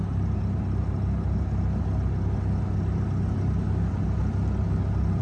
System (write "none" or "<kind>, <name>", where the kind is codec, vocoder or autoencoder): none